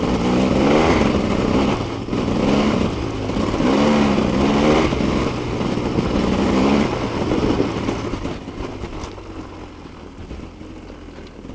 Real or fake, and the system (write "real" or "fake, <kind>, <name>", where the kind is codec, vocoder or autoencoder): real